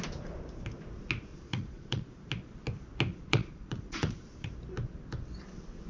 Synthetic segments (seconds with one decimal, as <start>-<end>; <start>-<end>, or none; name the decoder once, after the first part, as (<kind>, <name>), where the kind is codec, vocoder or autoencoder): 1.3-2.1 (vocoder, Vocos); 3.1-4.5